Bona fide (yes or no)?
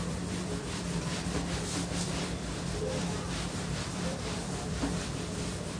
no